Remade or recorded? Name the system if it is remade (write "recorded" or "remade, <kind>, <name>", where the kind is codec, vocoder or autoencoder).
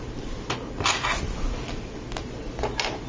recorded